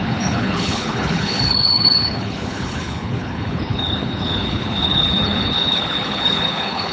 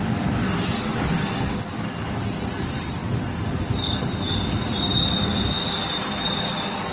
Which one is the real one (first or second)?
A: second